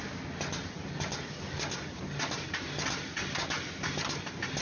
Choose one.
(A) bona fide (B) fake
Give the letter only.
A